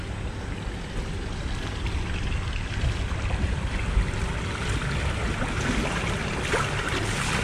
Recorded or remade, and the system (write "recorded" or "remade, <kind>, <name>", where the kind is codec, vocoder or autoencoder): recorded